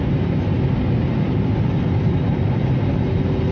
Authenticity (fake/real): real